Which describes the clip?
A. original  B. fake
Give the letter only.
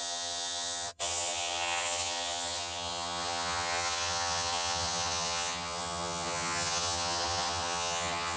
B